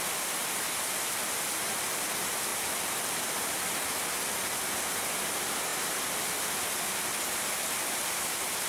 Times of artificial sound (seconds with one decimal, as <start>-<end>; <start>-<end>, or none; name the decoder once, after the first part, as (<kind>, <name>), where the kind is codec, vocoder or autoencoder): none